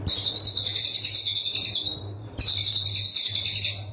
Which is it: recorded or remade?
recorded